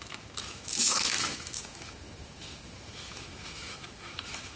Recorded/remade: remade